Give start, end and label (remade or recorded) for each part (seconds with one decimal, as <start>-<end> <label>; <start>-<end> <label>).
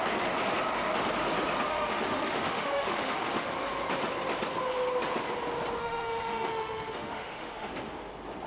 0.0-1.7 recorded; 1.7-3.5 remade; 3.5-5.8 recorded; 5.8-7.7 remade; 7.7-8.5 recorded